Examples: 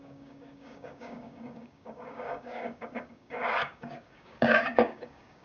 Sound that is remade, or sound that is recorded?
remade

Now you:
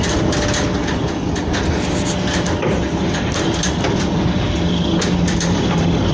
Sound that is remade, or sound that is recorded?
recorded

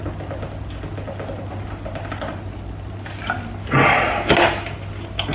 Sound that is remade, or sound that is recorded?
recorded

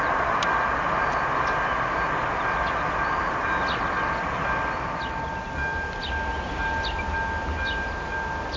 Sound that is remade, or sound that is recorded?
recorded